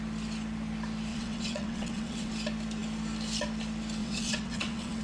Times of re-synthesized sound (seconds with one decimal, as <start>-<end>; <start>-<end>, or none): 1.1-2.3; 4.0-5.0